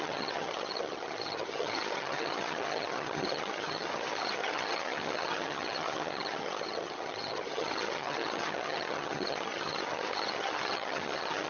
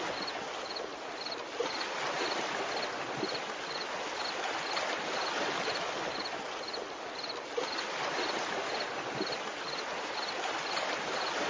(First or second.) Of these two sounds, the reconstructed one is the first